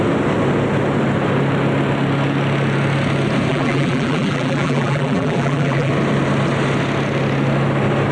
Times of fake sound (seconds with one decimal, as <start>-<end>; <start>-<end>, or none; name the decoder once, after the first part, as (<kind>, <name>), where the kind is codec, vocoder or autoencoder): 3.5-5.9 (vocoder, BigVGAN v2)